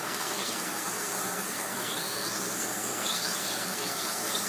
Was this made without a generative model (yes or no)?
no